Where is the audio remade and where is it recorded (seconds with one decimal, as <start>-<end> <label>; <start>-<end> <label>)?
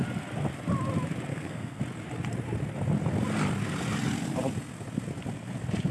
0.0-1.3 recorded; 1.3-1.8 remade; 1.8-5.9 recorded